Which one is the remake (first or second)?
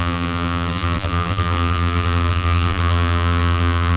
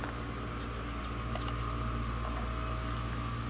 first